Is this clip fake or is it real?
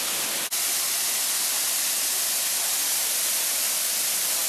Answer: real